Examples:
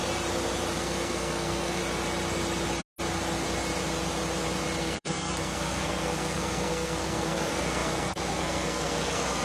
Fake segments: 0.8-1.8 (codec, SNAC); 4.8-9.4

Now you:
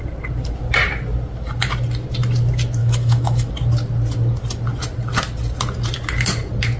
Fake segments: 2.8-3.5 (autoencoder, DAC-VAE)

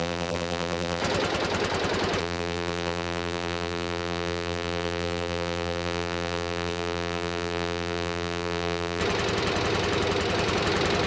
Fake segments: 0.0-1.0 (vocoder, BigVGAN v2); 2.2-9.0

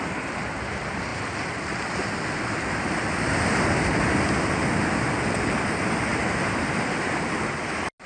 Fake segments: none

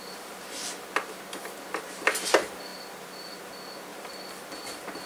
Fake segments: 2.7-3.4 (vocoder, BigVGAN v2); 3.9-5.1